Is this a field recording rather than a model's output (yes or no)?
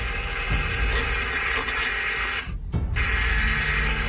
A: yes